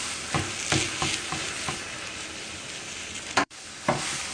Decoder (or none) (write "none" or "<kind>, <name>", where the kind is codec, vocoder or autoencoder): none